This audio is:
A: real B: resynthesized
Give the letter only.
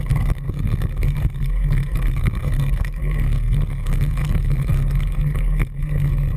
B